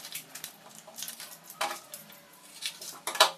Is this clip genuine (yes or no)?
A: no